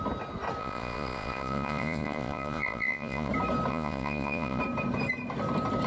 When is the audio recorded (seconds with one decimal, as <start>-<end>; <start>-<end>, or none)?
0.0-0.6; 3.3-3.7; 4.6-5.9